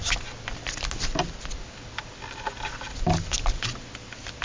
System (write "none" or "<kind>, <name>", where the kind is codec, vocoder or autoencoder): none